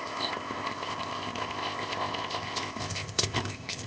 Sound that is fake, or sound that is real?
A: fake